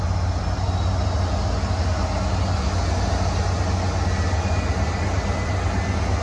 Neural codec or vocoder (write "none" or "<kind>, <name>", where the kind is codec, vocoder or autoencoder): none